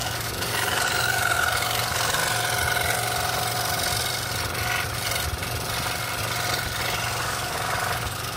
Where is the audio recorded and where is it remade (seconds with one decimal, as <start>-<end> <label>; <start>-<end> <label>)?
0.0-2.2 remade; 2.2-7.2 recorded; 7.2-8.4 remade